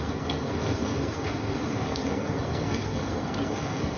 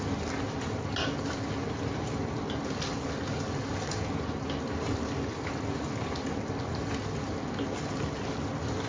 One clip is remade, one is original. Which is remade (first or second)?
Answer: first